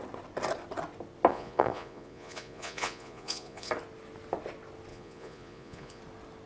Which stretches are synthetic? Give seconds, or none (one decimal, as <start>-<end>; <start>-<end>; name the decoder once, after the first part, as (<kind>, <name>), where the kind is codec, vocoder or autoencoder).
1.3-3.7 (vocoder, Vocos); 4.9-6.0